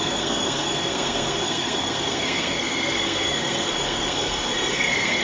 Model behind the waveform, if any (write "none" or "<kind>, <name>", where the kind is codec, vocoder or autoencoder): codec, SNAC